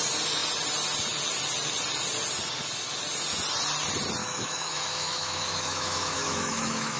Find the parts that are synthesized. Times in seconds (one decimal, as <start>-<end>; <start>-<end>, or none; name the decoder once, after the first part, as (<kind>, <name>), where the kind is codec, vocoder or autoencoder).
4.2-7.0 (autoencoder, DAC-VAE)